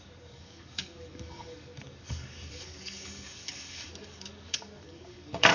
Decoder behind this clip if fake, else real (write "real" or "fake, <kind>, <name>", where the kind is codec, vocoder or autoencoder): fake, codec, DAC